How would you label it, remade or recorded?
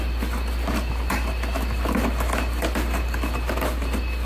recorded